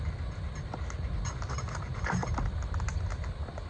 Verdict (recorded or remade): recorded